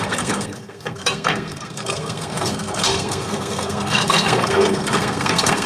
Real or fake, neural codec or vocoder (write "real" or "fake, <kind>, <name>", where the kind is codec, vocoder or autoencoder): fake, codec, SNAC